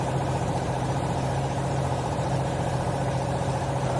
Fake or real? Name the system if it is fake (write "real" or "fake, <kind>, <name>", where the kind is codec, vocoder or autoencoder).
fake, vocoder, BigVGAN v2